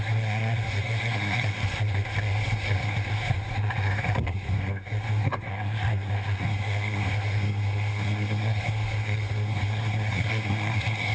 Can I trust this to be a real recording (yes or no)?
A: no